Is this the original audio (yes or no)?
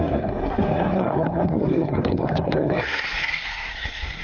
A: no